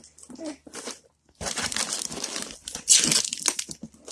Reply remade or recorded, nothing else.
recorded